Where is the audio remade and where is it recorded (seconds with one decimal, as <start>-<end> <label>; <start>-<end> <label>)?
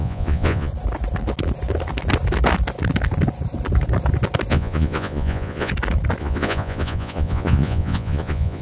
0.0-0.7 remade; 0.7-4.5 recorded; 4.5-5.7 remade; 5.7-6.2 recorded; 6.2-8.6 remade